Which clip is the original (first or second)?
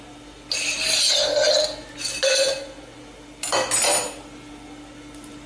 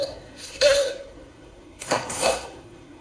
first